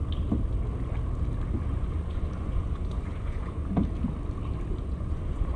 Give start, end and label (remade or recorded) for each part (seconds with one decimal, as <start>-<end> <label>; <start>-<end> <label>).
0.0-1.7 recorded; 1.7-3.7 remade; 3.7-4.8 recorded; 4.8-5.6 remade